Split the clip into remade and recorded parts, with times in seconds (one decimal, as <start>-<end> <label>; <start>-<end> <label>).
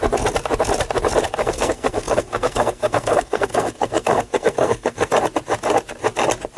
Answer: 0.0-1.4 recorded; 1.4-5.1 remade; 5.1-6.6 recorded